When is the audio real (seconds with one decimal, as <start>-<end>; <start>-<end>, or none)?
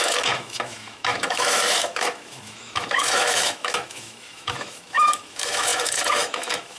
none